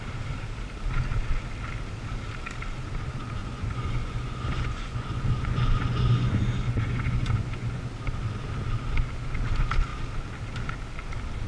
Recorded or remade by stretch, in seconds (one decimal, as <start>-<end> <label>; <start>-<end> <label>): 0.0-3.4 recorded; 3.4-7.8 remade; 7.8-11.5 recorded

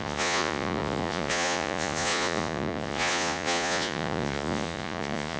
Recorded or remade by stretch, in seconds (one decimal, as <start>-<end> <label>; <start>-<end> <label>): 0.0-5.4 remade

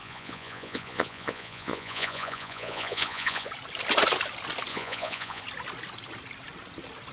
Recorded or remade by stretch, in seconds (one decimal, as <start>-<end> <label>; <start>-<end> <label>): 0.0-3.5 remade; 3.5-4.7 recorded; 4.7-5.4 remade; 5.4-7.1 recorded

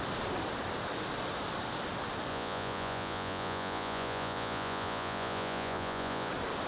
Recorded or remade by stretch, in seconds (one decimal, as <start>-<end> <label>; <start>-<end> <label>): 0.0-2.3 recorded; 2.3-6.3 remade; 6.3-6.7 recorded

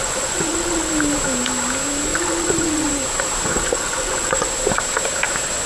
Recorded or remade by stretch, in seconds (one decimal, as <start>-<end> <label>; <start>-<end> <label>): 0.0-0.9 remade; 0.9-2.1 recorded; 2.1-2.9 remade; 2.9-3.5 recorded; 3.5-4.5 remade; 4.5-5.7 recorded